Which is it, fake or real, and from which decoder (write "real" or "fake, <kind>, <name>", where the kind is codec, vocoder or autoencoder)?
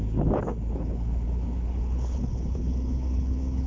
fake, codec, HILCodec